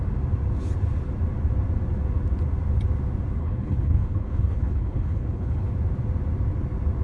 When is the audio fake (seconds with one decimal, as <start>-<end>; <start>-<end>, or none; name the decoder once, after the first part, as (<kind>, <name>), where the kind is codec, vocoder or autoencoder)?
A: 3.4-5.7 (codec, HILCodec)